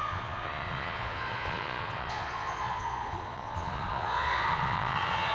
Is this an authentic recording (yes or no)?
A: no